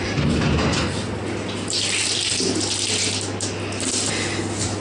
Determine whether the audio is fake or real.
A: real